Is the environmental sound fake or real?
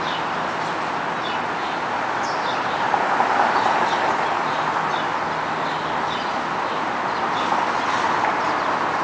real